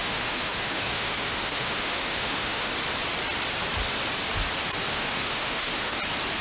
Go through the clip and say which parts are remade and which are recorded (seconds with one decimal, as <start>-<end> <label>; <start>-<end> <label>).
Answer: 0.0-2.7 remade; 2.7-4.9 recorded; 4.9-6.0 remade; 6.0-6.4 recorded